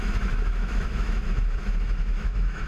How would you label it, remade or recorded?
remade